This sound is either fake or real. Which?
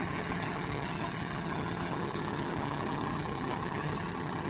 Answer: fake